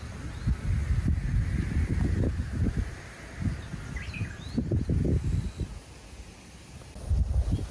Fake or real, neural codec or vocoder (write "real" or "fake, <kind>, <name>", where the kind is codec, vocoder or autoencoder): real